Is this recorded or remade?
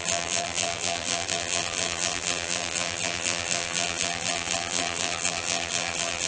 remade